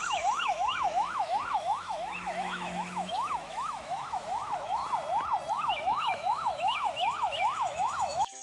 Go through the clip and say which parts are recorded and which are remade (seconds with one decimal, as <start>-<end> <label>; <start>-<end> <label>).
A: 0.0-4.8 remade; 4.8-5.5 recorded; 5.5-8.4 remade

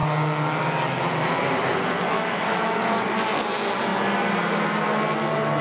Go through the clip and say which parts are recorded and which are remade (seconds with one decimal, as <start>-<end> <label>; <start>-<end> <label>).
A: 0.0-2.1 recorded; 2.1-2.8 remade; 2.8-5.6 recorded